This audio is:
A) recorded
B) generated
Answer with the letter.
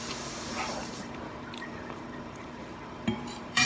B